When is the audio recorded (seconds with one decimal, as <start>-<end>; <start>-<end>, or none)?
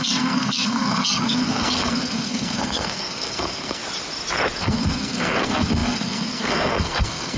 3.8-4.6